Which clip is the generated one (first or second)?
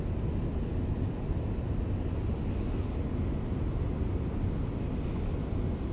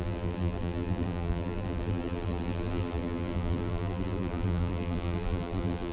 second